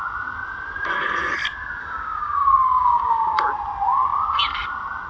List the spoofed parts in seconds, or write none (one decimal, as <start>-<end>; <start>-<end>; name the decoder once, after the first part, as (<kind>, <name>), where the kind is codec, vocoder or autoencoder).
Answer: 1.8-3.4 (codec, DAC)